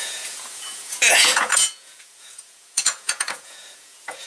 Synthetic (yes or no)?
yes